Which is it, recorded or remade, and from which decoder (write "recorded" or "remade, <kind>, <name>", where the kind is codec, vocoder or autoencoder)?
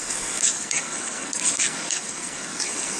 remade, codec, SNAC